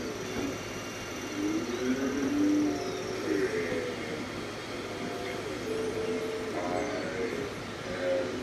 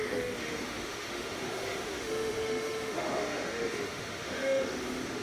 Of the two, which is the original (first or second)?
first